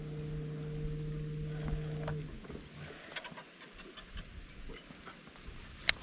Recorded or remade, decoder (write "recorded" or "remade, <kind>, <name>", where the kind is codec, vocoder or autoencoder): recorded